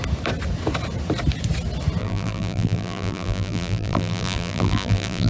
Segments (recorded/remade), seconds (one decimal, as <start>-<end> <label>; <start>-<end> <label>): 0.0-2.0 recorded; 2.0-5.3 remade

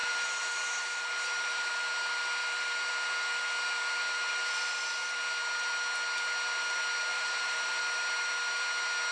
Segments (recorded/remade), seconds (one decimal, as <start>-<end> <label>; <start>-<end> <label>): 0.0-1.7 remade; 1.7-7.1 recorded; 7.1-7.8 remade; 7.8-9.1 recorded

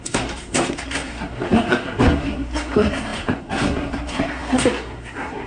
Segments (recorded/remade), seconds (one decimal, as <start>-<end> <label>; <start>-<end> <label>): 0.0-5.5 remade